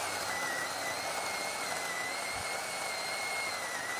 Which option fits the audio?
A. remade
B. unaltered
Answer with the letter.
B